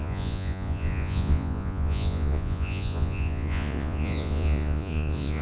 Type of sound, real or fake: fake